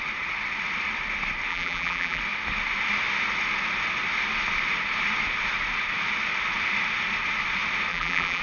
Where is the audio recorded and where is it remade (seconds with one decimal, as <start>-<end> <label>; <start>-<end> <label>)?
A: 0.0-1.5 recorded; 1.5-2.2 remade; 2.2-7.9 recorded; 7.9-8.4 remade